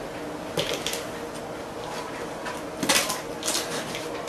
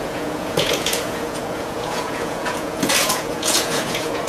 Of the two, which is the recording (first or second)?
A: first